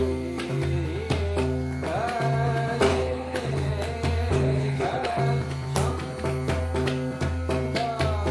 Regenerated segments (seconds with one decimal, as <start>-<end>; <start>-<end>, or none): 2.9-3.7; 4.3-5.2